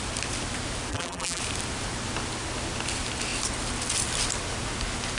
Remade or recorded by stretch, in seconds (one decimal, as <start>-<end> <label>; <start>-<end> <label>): 0.0-0.9 recorded; 0.9-1.4 remade; 1.4-5.2 recorded